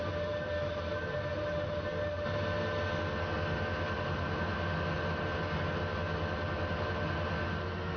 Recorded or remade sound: recorded